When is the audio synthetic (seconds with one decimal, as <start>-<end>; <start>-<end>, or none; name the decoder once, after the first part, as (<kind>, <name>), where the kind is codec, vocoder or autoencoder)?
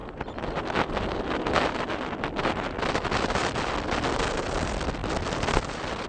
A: none